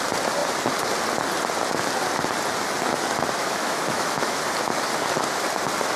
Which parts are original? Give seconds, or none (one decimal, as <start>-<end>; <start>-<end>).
0.0-3.4; 4.4-6.0